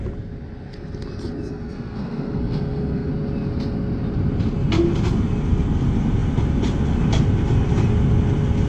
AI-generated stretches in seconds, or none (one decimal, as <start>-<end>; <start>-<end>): 1.5-3.1